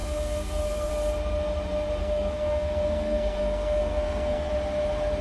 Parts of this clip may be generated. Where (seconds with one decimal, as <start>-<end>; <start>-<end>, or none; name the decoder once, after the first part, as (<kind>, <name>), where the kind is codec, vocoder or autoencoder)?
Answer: 0.0-0.9 (codec, SNAC); 2.0-4.5